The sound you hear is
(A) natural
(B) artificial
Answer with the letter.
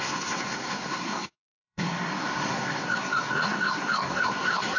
B